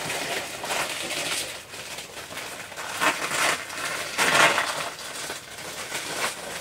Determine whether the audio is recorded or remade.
recorded